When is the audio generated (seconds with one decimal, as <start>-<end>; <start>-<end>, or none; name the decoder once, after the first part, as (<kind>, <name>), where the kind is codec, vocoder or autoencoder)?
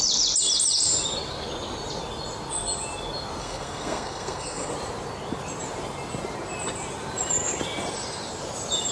3.4-4.7 (codec, SNAC)